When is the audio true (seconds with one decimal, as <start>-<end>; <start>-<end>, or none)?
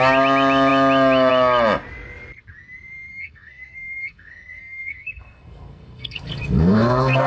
0.0-3.1